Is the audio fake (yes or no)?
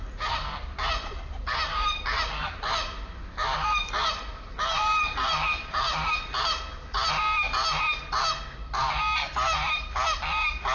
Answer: no